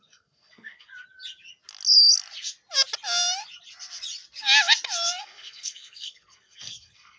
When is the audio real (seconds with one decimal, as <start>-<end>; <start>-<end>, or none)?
0.9-5.2